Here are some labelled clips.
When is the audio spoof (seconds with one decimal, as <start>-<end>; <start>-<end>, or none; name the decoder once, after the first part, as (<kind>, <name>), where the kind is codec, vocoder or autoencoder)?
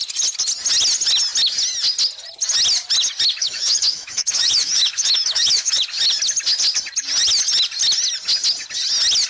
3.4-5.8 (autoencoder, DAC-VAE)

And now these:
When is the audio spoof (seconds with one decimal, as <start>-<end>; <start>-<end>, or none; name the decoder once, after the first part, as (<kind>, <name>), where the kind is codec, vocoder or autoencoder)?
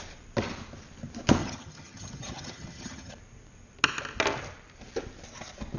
1.4-3.1 (vocoder, HiFi-GAN)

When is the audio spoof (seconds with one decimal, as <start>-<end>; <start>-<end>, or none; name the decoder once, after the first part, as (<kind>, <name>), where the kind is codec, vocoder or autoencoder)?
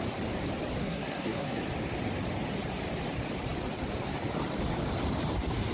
0.8-1.6 (codec, SNAC)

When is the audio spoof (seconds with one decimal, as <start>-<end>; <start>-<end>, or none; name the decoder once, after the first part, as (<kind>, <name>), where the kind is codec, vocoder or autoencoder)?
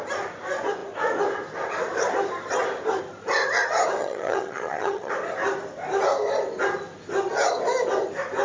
4.0-5.1 (vocoder, HiFi-GAN)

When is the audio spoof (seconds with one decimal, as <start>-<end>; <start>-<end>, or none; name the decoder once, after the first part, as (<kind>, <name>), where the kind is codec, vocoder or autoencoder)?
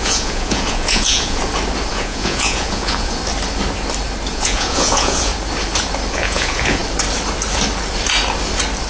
0.0-1.4 (vocoder, Vocos); 1.9-3.2; 4.3-5.3; 6.1-6.8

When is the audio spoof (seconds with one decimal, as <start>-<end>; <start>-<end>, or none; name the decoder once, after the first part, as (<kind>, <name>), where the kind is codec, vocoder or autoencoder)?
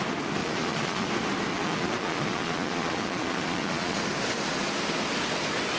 0.4-1.1 (vocoder, Vocos); 1.5-4.0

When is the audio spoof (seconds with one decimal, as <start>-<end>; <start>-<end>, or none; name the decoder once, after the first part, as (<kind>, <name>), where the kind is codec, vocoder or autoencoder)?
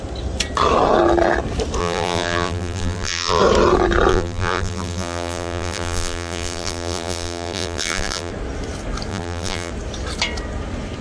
1.8-3.4 (vocoder, BigVGAN v2); 4.1-8.3; 9.1-9.7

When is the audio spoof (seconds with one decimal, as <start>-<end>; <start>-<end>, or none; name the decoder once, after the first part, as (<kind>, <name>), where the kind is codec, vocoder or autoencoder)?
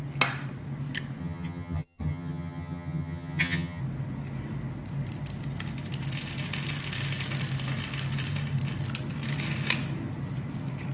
1.2-3.8 (vocoder, HiFi-GAN)